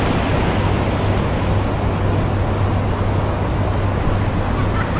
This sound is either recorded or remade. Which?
recorded